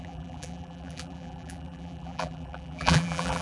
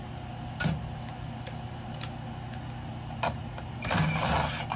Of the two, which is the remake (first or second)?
first